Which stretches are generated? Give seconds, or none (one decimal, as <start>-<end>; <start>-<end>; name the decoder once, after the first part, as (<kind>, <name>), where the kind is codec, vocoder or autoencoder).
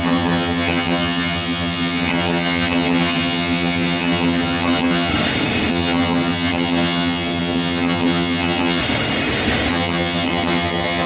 0.0-5.1 (vocoder, HiFi-GAN); 5.7-8.8; 9.7-11.1